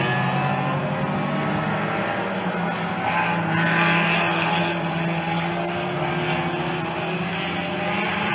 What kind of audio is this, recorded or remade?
recorded